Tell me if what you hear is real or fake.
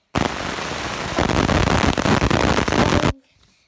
fake